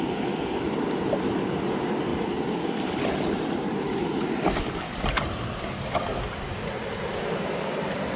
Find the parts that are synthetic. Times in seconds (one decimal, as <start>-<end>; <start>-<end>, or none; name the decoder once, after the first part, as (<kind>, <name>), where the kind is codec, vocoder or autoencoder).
none